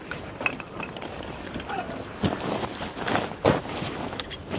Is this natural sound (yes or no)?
no